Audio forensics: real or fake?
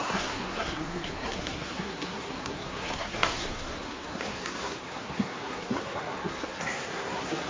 fake